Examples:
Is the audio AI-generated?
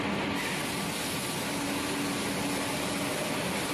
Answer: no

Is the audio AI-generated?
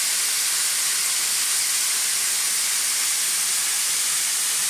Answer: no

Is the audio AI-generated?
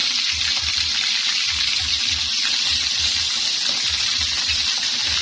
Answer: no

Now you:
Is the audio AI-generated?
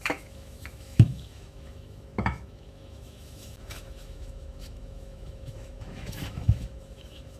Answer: yes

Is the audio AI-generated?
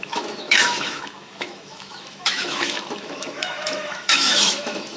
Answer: yes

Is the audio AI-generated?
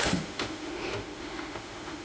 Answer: yes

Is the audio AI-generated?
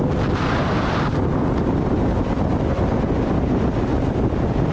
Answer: no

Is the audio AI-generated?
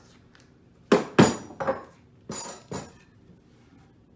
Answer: no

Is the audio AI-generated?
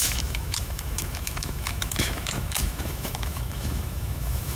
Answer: yes